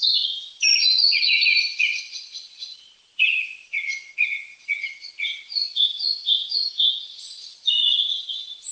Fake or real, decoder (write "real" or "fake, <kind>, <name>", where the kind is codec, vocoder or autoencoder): fake, vocoder, Vocos